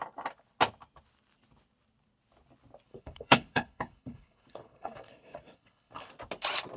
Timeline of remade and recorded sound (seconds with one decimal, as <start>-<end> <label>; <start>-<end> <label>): 0.0-2.9 recorded; 2.9-6.1 remade; 6.1-6.8 recorded